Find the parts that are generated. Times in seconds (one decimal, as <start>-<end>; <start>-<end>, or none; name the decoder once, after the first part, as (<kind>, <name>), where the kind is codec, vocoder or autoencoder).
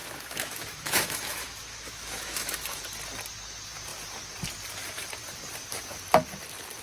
0.0-2.8 (autoencoder, DAC-VAE)